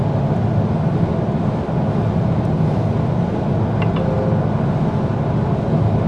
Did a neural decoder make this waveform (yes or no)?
no